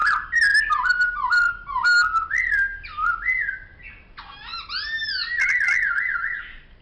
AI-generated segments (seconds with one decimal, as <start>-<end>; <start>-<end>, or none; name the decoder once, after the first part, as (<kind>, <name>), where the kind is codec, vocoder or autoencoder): none